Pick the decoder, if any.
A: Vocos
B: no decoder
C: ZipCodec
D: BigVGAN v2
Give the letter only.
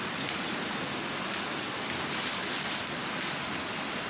B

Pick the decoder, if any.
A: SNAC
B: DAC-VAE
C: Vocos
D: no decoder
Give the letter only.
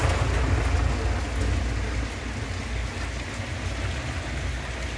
D